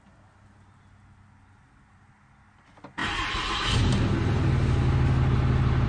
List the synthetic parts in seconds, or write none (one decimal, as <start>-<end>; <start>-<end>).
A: none